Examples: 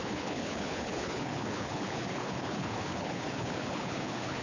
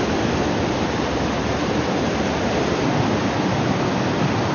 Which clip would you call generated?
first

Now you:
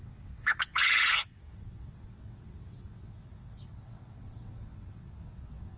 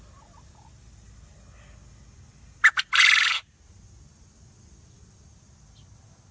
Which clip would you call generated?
first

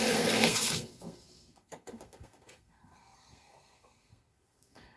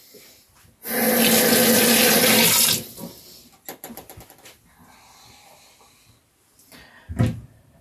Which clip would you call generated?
first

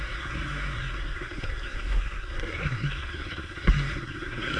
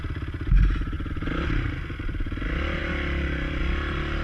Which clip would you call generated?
first